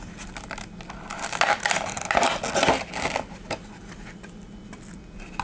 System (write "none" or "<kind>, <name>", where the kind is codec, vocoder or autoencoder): none